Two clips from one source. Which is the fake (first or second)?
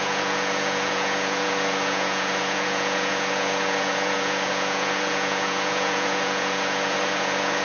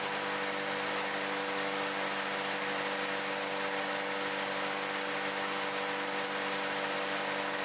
first